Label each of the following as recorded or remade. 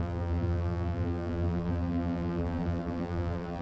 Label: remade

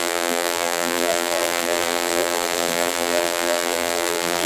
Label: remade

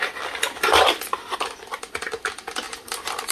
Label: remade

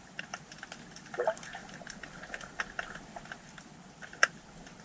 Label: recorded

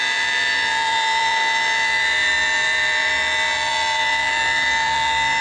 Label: remade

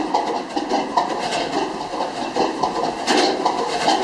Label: recorded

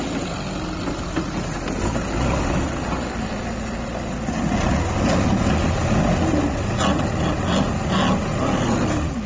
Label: recorded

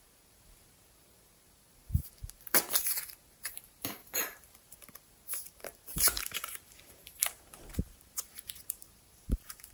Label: remade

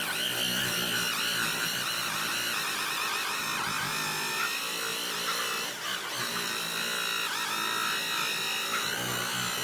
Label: recorded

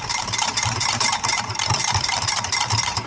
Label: remade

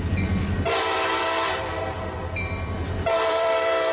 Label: remade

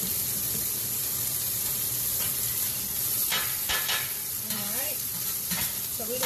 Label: remade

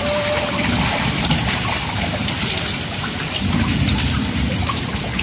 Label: remade